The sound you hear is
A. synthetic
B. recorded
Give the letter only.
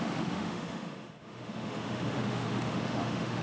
A